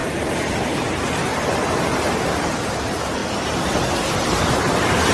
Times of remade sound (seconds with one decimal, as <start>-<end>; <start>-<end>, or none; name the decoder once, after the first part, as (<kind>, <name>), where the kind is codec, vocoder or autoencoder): 0.9-1.3 (vocoder, BigVGAN v2); 2.7-3.2; 4.1-5.1